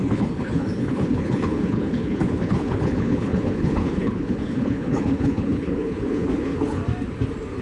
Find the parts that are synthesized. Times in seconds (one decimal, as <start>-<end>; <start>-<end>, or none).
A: 0.0-6.8